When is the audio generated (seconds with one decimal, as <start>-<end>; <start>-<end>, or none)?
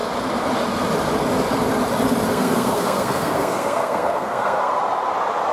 2.3-4.8